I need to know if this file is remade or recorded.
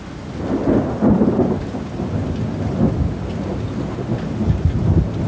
recorded